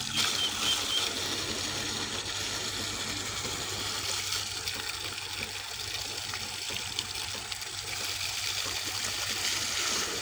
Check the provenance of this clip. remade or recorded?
recorded